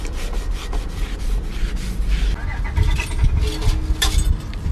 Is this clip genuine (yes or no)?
yes